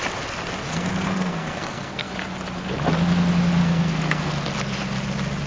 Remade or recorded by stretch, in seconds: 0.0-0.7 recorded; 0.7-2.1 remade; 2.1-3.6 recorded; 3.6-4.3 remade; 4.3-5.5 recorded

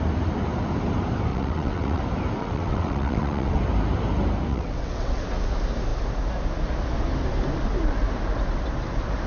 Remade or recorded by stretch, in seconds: 0.0-1.3 recorded; 1.3-2.0 remade; 2.0-2.4 recorded; 2.4-3.6 remade; 3.6-4.5 recorded; 4.5-5.2 remade; 5.2-9.3 recorded

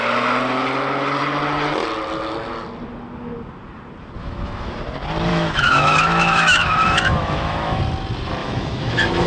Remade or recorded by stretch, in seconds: 0.0-4.2 recorded; 4.2-4.7 remade; 4.7-5.3 recorded; 5.3-7.8 remade; 7.8-8.4 recorded; 8.4-9.3 remade